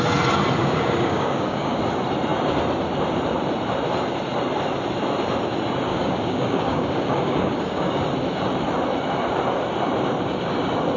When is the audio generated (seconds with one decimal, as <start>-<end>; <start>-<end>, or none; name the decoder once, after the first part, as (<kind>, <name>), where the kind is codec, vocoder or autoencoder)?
0.6-1.8 (codec, DAC); 5.9-8.0